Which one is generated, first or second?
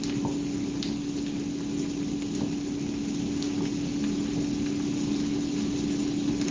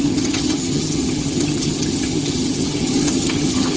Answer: second